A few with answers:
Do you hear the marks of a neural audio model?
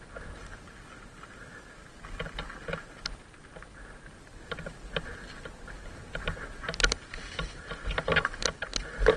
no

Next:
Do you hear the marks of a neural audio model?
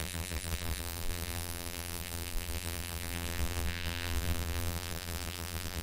yes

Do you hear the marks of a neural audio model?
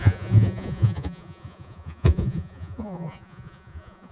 yes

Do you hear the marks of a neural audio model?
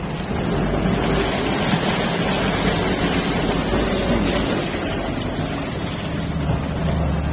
no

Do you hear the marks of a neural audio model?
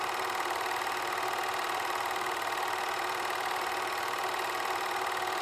no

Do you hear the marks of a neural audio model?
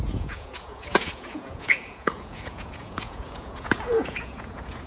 yes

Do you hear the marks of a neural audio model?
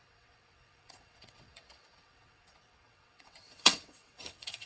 yes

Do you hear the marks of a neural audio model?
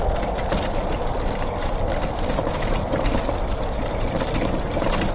no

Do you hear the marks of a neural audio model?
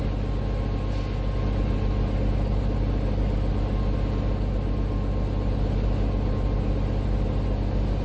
no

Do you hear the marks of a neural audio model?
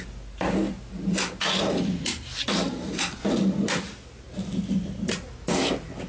no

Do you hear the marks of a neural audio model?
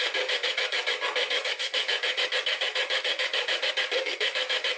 yes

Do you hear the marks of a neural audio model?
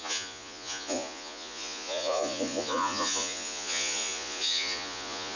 yes